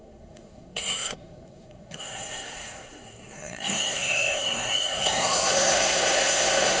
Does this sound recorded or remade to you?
remade